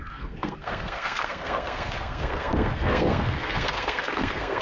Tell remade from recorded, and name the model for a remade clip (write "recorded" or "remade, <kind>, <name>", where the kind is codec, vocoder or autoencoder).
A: remade, codec, SNAC